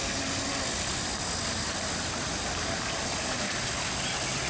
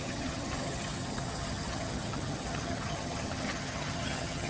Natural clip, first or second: first